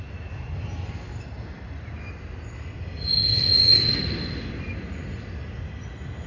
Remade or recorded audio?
recorded